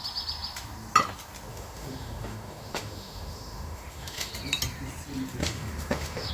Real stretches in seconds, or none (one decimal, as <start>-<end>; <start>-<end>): 0.0-1.5; 4.3-5.4